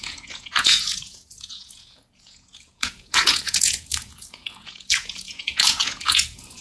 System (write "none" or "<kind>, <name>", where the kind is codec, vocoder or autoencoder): vocoder, Vocos